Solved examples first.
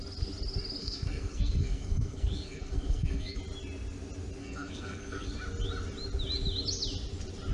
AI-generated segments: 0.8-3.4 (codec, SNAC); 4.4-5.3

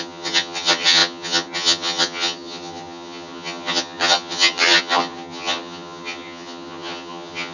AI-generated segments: 0.0-7.5 (vocoder, HiFi-GAN)

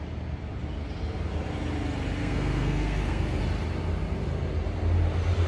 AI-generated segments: 2.2-3.4 (codec, SNAC)

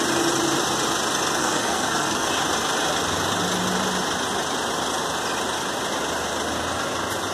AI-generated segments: 1.4-2.3 (codec, SNAC)

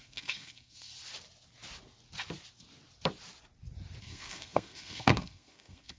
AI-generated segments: 0.0-0.9 (codec, SNAC); 4.0-6.0

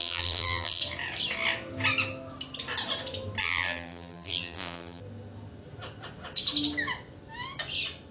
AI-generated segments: 0.0-0.8 (vocoder, BigVGAN v2); 3.4-5.0

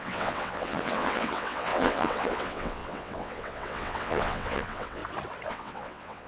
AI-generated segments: 0.0-5.0 (vocoder, WaveNeXt); 5.5-6.3

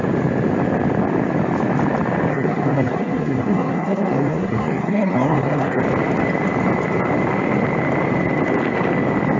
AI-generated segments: 2.3-5.8 (codec, SNAC)